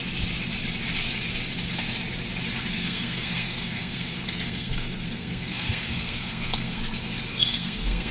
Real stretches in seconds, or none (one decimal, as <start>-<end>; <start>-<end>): 0.0-2.7; 6.8-7.3